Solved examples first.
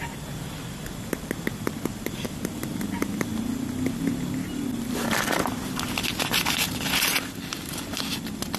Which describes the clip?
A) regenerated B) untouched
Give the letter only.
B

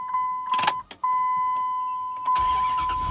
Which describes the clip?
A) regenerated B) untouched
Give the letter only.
B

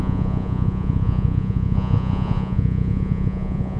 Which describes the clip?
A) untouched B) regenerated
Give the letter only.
B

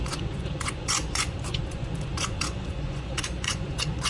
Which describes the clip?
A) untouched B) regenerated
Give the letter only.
B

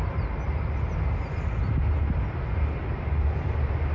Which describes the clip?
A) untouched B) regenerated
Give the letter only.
A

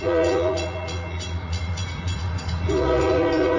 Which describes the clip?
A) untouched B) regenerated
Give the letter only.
B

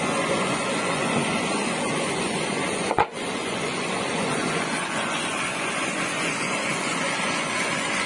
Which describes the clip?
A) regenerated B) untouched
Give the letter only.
A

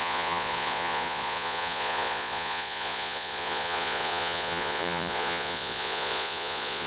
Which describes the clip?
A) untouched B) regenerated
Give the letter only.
B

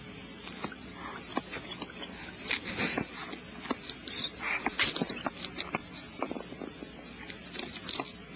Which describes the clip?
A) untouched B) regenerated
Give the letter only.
A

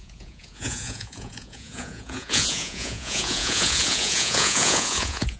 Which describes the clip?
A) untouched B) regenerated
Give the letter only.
B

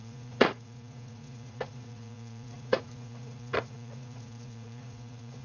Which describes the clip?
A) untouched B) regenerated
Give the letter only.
B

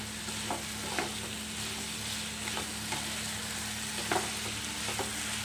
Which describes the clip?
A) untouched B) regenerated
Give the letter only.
A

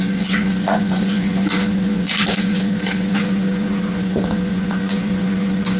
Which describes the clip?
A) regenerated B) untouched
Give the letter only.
A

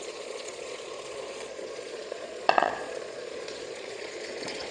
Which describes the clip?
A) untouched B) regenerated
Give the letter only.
B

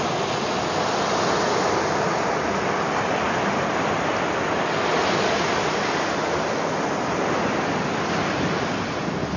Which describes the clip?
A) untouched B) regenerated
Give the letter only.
A